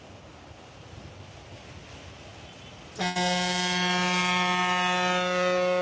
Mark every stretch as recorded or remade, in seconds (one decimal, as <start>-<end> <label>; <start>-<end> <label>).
0.0-5.8 recorded